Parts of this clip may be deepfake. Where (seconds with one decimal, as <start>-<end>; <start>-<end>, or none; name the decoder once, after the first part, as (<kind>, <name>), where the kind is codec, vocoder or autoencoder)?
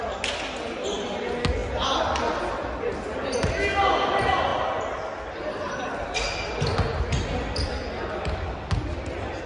none